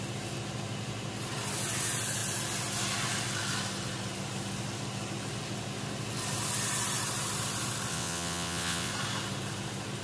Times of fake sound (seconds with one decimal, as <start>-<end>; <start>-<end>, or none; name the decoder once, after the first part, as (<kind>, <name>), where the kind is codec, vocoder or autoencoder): 7.9-8.9 (vocoder, WaveNeXt)